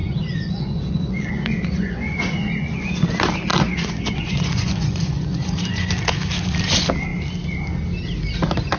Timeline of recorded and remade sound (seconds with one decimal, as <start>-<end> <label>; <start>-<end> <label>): 0.0-3.1 remade; 3.1-3.5 recorded; 3.5-5.9 remade; 5.9-8.8 recorded